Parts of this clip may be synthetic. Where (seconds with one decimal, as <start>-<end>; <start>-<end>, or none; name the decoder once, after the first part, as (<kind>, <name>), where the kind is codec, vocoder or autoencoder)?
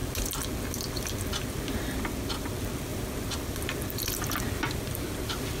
2.9-4.4 (vocoder, BigVGAN v2)